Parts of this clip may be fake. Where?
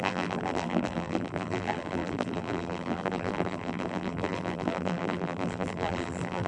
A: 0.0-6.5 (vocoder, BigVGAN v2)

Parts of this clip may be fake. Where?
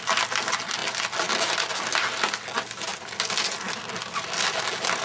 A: none